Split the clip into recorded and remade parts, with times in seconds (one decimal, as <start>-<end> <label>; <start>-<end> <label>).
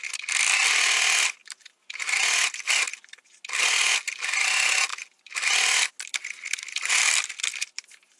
0.0-8.2 recorded